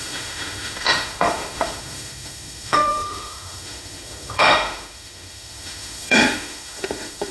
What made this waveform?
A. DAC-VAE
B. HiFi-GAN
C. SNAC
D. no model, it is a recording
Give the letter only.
A